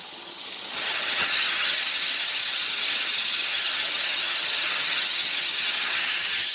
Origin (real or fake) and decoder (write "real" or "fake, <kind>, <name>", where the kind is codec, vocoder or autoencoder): fake, vocoder, HiFi-GAN